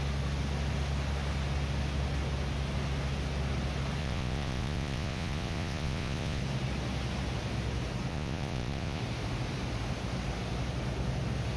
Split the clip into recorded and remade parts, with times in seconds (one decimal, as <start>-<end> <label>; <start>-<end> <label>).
0.0-4.0 recorded; 4.0-6.4 remade; 6.4-8.1 recorded; 8.1-9.0 remade; 9.0-11.6 recorded